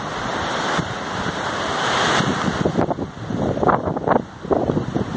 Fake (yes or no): no